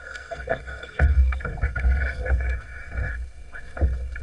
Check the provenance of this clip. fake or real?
fake